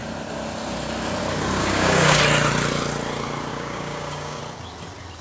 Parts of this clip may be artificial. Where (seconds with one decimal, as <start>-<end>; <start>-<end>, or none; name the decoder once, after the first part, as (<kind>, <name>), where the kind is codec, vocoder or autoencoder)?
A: 1.6-2.2 (codec, DAC); 3.5-4.4